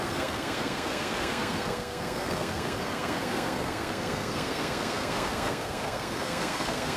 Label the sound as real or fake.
fake